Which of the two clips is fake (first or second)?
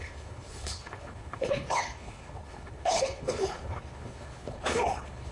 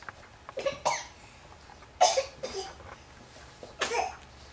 first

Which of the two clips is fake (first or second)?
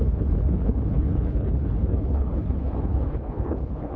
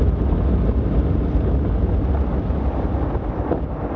first